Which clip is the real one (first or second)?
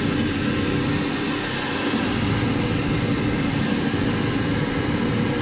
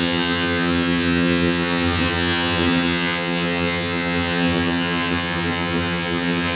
first